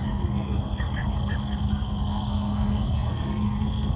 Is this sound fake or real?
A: fake